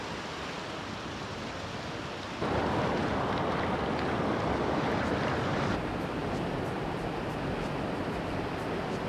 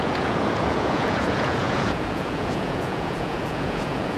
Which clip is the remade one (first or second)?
second